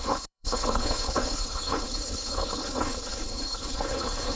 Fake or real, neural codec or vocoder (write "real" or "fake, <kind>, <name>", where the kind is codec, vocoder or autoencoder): fake, codec, HILCodec